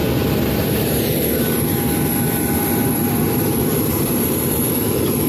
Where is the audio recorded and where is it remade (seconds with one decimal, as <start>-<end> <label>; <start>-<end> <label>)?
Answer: 0.0-3.9 recorded; 3.9-4.7 remade; 4.7-5.3 recorded